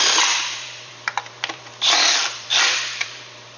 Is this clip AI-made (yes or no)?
yes